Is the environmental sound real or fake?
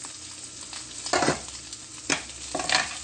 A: real